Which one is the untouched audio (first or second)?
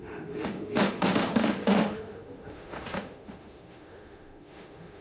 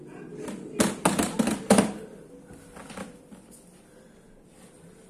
second